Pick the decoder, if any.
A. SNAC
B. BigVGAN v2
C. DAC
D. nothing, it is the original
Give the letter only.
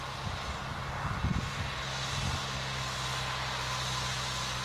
D